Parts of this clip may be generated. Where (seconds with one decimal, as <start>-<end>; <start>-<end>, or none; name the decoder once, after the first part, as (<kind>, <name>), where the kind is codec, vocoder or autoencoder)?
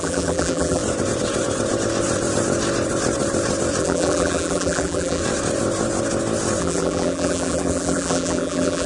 0.0-0.8 (vocoder, BigVGAN v2); 3.8-5.2; 6.6-8.9